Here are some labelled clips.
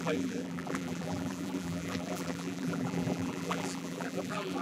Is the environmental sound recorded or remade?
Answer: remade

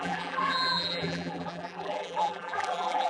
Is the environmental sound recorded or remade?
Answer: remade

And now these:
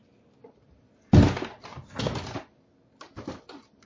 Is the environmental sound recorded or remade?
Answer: recorded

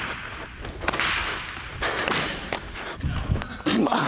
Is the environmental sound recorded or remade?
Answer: recorded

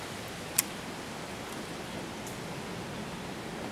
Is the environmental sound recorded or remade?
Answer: recorded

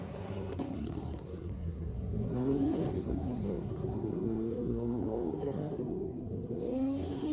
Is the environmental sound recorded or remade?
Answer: remade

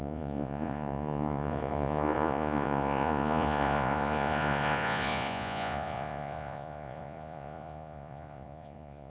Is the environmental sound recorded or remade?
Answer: remade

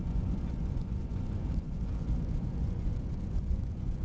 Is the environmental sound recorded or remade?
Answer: remade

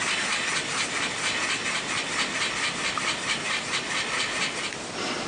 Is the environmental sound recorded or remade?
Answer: recorded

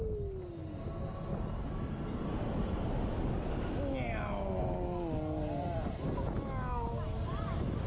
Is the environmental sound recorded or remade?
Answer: recorded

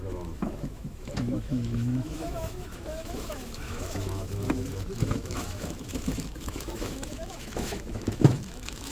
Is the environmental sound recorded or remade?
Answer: remade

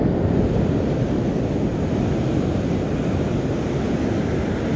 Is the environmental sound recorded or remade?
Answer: recorded